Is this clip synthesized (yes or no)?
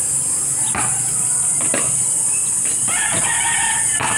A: no